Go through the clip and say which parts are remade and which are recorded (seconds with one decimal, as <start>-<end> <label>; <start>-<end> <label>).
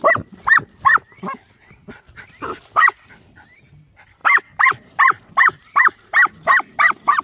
0.0-7.2 recorded